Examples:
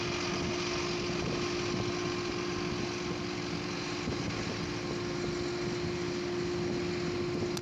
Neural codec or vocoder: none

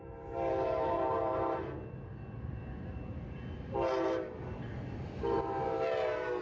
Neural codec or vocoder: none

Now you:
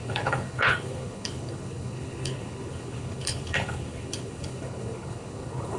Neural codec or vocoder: codec, HILCodec